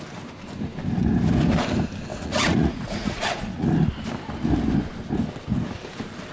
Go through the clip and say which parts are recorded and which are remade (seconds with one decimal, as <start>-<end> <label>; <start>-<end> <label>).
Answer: 0.0-2.1 recorded; 2.1-3.7 remade; 3.7-6.3 recorded